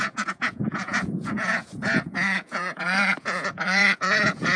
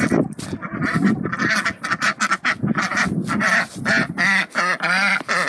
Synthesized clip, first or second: first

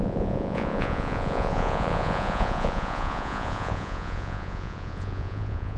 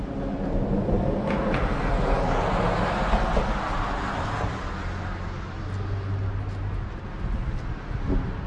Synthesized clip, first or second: first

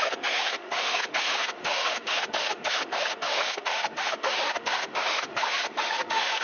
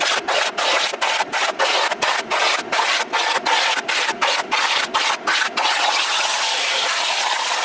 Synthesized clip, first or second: first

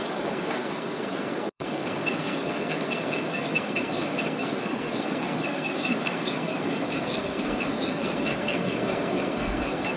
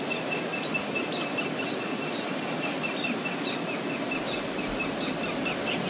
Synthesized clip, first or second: first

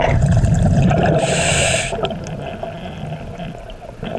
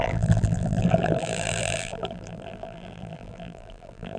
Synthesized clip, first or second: second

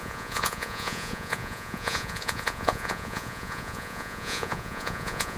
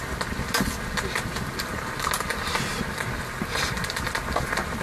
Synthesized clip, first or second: first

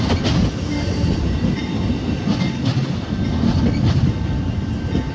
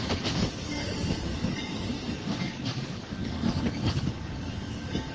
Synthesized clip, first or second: second